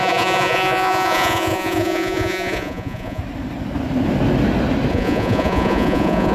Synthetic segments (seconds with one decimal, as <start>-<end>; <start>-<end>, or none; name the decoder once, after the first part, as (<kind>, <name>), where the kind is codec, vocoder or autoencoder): 0.0-3.2 (vocoder, Vocos); 4.9-6.3